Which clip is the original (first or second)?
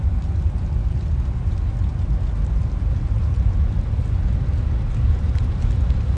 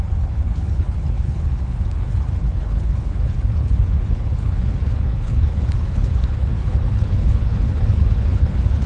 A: first